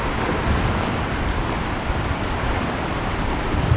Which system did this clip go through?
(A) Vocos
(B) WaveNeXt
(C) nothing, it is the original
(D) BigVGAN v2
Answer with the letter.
C